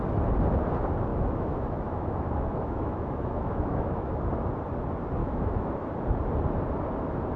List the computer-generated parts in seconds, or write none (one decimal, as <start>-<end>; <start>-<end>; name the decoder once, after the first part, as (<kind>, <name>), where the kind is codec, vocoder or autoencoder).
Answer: 1.1-4.1 (autoencoder, DAC-VAE); 5.2-5.7